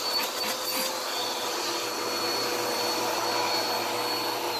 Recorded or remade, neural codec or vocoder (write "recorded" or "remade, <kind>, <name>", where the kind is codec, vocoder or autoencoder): recorded